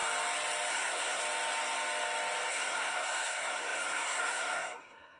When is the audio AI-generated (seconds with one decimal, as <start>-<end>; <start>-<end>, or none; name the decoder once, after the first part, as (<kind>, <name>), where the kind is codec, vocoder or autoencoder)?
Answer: 0.7-1.2 (codec, SNAC); 2.5-5.2